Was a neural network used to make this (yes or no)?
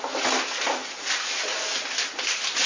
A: no